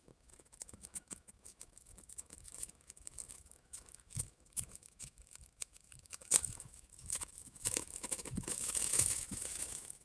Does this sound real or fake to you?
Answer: fake